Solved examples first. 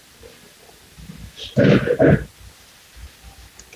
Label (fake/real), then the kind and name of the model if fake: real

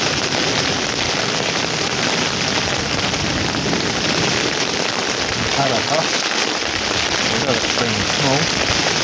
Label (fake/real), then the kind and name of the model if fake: real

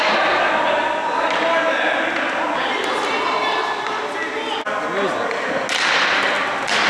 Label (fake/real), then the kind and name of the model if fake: real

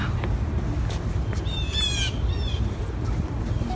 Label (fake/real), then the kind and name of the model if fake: real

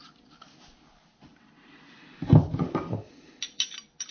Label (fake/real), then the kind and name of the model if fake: real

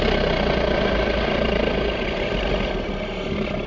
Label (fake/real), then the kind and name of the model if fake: real